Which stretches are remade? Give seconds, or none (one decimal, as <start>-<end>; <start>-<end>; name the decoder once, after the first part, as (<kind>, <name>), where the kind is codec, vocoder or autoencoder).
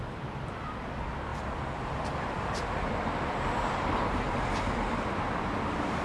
0.0-6.0 (vocoder, BigVGAN v2)